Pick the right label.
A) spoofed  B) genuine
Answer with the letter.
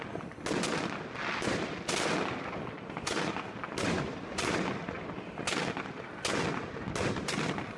B